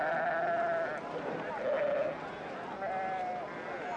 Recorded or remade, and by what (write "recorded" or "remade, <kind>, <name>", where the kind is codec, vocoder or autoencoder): recorded